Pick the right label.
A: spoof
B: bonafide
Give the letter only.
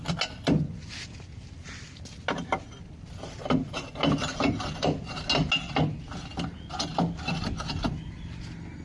B